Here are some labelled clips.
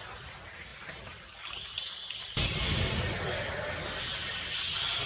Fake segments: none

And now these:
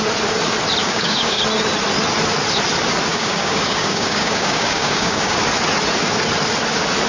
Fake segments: 0.8-1.4 (codec, DAC); 3.1-5.4

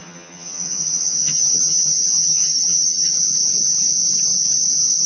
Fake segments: 0.0-3.1 (vocoder, HiFi-GAN)